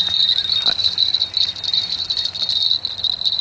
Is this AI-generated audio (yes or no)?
no